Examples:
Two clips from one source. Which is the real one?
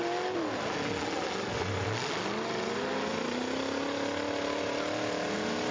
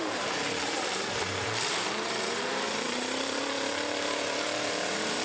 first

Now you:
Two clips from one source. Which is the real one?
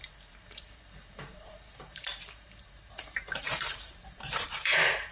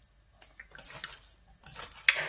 second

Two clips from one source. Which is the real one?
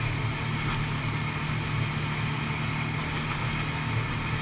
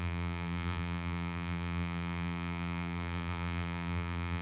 first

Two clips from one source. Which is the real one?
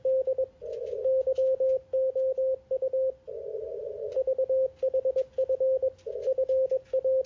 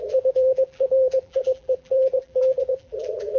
first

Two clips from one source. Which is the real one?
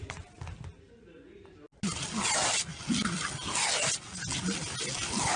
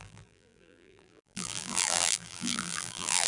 first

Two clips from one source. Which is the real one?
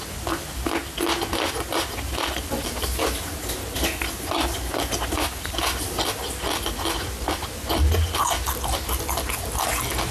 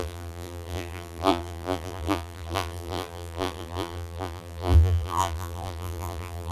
first